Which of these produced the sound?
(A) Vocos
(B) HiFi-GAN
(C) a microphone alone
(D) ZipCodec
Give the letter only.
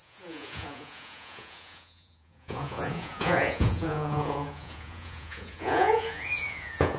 A